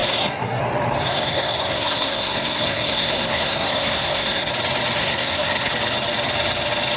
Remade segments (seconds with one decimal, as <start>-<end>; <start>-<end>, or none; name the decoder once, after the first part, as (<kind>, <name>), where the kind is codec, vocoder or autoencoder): 0.0-0.6 (codec, SNAC); 1.0-4.5; 5.0-5.7